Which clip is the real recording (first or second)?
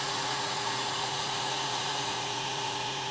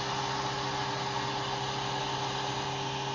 second